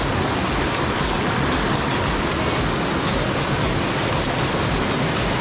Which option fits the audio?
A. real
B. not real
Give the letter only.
A